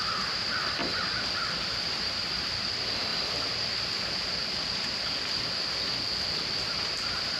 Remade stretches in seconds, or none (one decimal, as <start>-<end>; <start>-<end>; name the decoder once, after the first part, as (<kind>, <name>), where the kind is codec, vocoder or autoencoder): none